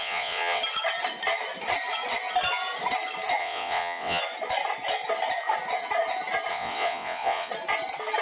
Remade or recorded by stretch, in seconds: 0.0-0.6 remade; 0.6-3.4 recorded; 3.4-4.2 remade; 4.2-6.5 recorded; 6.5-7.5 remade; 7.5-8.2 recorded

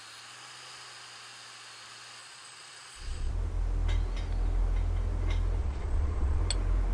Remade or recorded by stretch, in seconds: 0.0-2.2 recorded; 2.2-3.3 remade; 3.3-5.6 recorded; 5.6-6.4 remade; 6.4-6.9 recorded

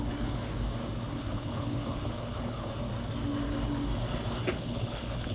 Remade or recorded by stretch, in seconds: 0.0-0.5 remade; 0.5-1.1 recorded; 1.1-2.7 remade; 2.7-4.5 recorded; 4.5-5.3 remade

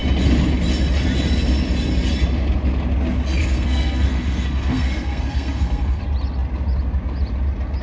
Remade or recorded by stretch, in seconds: 0.0-3.4 recorded; 3.4-6.0 remade; 6.0-7.8 recorded

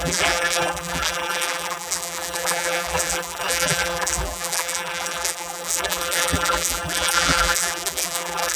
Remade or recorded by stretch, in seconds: 0.0-8.6 remade

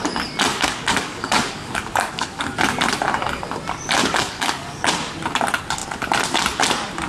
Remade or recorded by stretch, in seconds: 0.0-0.5 recorded; 0.5-2.4 remade; 2.4-4.0 recorded; 4.0-4.9 remade; 4.9-7.1 recorded